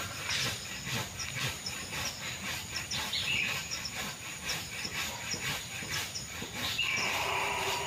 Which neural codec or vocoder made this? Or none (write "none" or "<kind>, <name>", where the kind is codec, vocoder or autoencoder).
vocoder, BigVGAN v2